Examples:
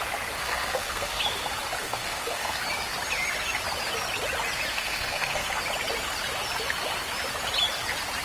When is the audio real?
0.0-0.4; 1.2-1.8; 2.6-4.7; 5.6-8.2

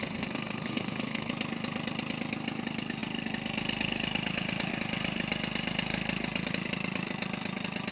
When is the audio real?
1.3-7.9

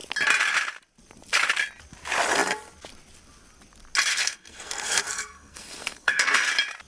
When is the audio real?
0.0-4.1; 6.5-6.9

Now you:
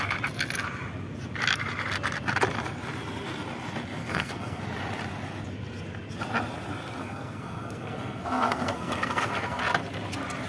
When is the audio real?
0.0-4.0; 4.6-7.0; 9.6-10.5

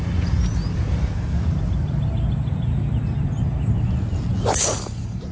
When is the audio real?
0.0-5.3